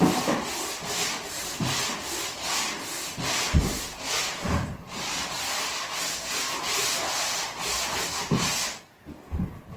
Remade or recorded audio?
recorded